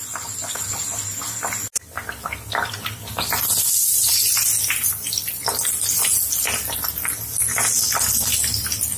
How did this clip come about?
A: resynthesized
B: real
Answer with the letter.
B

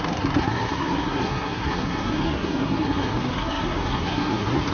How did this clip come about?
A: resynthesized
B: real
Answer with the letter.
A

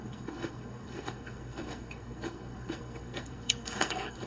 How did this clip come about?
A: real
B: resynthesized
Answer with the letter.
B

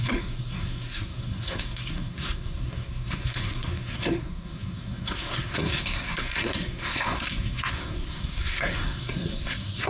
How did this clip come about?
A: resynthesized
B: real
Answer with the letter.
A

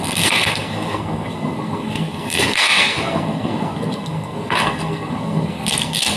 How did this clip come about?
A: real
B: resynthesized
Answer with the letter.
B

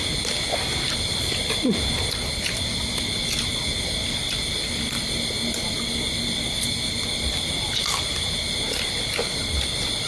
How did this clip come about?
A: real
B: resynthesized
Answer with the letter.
A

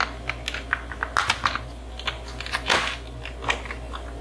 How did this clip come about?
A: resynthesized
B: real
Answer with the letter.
B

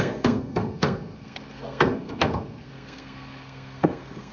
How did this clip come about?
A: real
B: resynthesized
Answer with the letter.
B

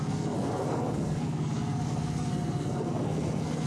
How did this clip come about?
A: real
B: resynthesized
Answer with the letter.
B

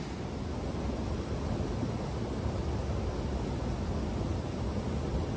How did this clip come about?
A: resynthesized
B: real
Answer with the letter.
B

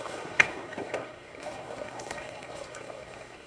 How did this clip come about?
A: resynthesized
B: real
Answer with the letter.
A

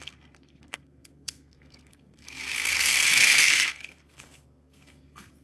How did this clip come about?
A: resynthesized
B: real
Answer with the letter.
A